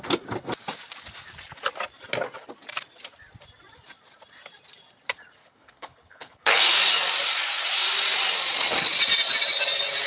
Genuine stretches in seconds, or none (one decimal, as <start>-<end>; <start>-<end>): 0.0-5.4; 6.6-10.1